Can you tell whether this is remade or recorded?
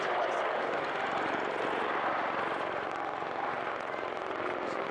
recorded